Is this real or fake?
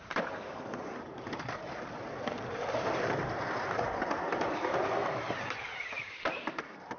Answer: fake